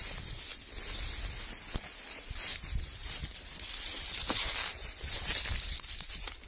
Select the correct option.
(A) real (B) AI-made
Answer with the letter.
A